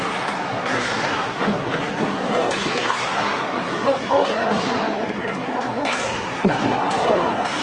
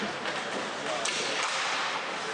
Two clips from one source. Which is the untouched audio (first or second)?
second